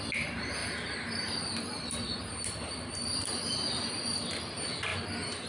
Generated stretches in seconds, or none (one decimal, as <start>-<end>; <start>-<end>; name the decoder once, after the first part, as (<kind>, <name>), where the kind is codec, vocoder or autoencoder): 0.6-3.9 (vocoder, BigVGAN v2)